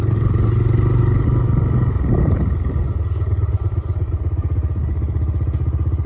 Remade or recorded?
recorded